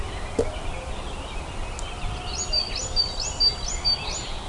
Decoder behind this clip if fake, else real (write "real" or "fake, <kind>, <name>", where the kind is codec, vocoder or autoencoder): real